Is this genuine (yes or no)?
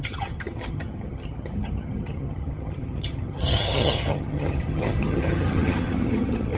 no